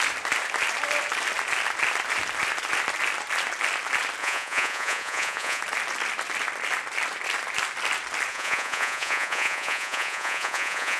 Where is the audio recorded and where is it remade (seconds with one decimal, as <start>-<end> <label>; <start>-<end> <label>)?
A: 0.0-4.2 recorded; 4.2-5.6 remade; 5.6-8.3 recorded; 8.3-11.0 remade